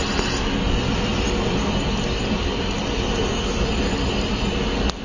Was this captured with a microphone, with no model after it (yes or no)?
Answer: yes